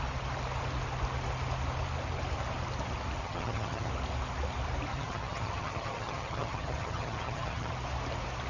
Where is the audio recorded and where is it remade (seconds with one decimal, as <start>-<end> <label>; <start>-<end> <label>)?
0.0-3.2 recorded; 3.2-3.9 remade; 3.9-4.9 recorded; 4.9-7.7 remade; 7.7-8.5 recorded